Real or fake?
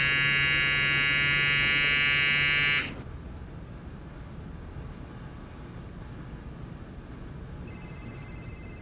real